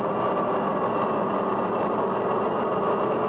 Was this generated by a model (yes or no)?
no